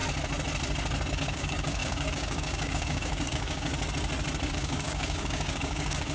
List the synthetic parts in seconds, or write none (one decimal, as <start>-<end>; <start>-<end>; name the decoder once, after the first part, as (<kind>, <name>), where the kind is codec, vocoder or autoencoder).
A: 1.1-3.7 (codec, DAC); 4.5-6.1